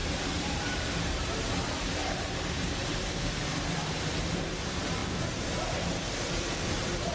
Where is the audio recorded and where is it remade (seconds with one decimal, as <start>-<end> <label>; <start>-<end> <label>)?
0.0-7.1 remade